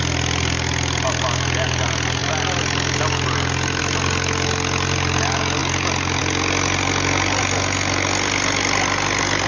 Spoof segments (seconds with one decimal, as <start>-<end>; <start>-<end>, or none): none